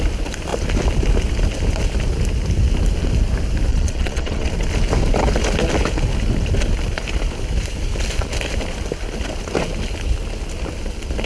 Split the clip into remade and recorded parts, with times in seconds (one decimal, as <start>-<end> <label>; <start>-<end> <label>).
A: 0.0-3.7 recorded; 3.7-4.5 remade; 4.5-11.3 recorded

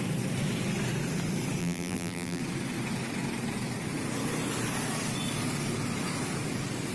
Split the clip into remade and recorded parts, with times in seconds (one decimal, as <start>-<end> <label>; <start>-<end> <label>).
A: 0.0-1.6 recorded; 1.6-2.4 remade; 2.4-6.9 recorded

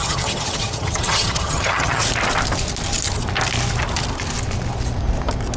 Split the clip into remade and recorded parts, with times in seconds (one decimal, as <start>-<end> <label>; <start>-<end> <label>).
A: 0.0-2.0 remade; 2.0-5.6 recorded

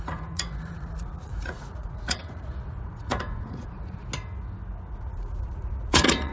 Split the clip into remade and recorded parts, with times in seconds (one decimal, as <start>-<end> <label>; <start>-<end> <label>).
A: 0.0-4.0 remade; 4.0-4.9 recorded; 4.9-6.3 remade

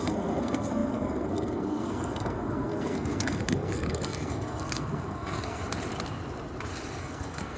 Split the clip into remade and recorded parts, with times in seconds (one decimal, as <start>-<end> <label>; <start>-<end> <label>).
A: 0.0-5.6 remade; 5.6-7.0 recorded; 7.0-7.6 remade

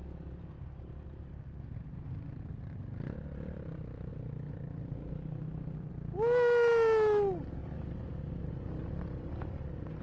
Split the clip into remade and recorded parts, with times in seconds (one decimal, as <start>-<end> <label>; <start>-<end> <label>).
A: 0.0-7.6 recorded; 7.6-8.1 remade; 8.1-10.0 recorded

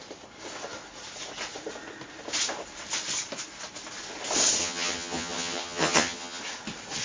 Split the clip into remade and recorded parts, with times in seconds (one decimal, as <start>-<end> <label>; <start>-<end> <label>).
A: 0.0-4.6 recorded; 4.6-6.4 remade; 6.4-7.0 recorded

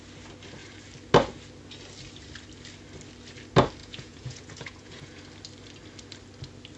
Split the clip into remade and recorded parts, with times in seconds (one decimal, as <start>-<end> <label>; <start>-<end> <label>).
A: 0.0-3.8 recorded; 3.8-5.2 remade; 5.2-6.8 recorded